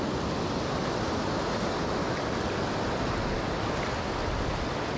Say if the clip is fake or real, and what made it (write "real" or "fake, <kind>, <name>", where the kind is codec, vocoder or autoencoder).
real